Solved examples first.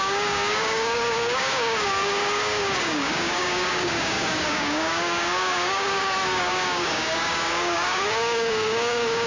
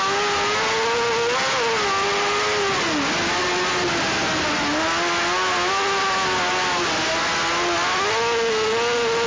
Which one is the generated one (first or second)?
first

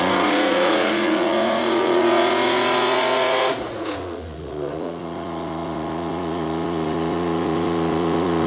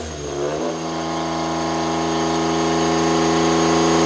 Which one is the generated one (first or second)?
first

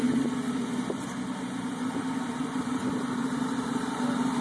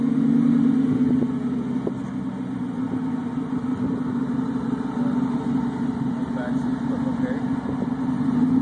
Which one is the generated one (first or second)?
first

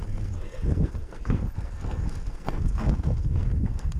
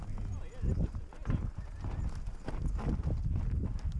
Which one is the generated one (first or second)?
first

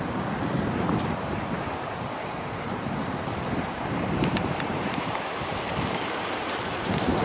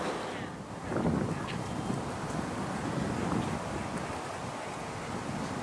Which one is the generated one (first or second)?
first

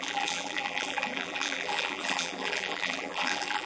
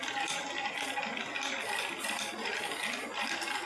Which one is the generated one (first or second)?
first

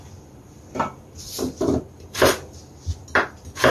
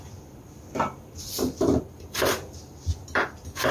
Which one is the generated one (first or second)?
second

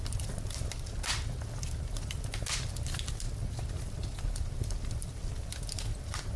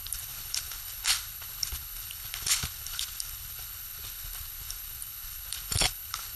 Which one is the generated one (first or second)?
second